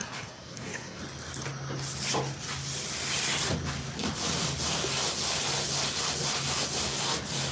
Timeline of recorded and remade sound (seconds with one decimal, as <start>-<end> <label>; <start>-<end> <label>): 0.0-1.0 remade; 1.0-7.5 recorded